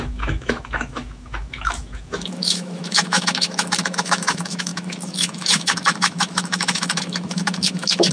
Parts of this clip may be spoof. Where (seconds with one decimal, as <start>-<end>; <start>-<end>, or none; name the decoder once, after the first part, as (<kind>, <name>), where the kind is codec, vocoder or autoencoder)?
0.0-8.1 (autoencoder, DAC-VAE)